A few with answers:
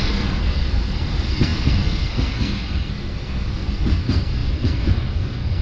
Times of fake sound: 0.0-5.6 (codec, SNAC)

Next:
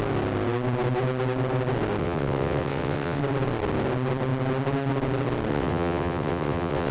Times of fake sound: 2.0-3.2 (vocoder, WaveNeXt); 5.5-6.9

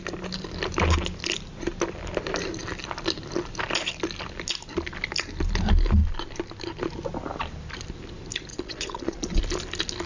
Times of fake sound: 8.5-9.4 (vocoder, Vocos)